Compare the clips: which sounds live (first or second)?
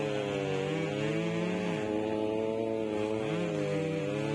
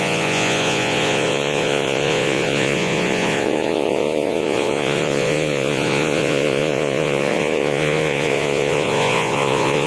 first